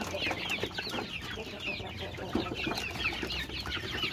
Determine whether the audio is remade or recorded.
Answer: recorded